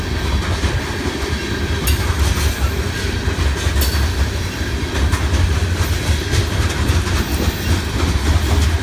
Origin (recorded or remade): recorded